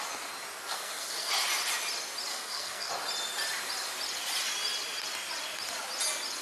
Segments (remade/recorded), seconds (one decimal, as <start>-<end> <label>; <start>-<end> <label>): 0.0-0.7 recorded; 0.7-1.3 remade; 1.3-2.3 recorded; 2.3-2.9 remade; 2.9-6.4 recorded